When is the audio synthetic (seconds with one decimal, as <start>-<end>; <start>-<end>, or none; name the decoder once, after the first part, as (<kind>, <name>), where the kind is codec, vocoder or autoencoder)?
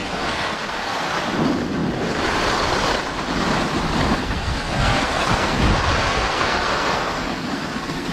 0.0-1.1 (codec, SNAC); 4.2-5.6; 6.0-8.1